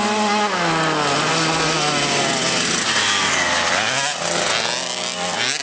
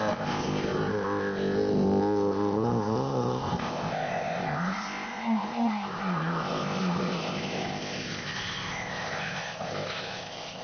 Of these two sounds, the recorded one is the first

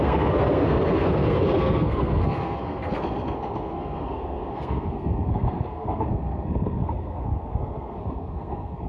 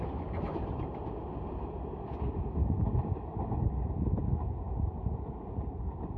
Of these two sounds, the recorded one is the second